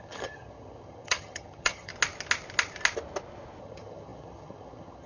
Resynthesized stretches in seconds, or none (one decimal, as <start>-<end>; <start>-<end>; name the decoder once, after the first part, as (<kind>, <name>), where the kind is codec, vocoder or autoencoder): 0.0-1.9 (vocoder, HiFi-GAN); 3.6-5.1